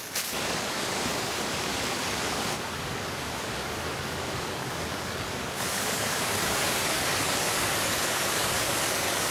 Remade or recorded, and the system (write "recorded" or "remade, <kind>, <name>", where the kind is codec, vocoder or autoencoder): remade, codec, DAC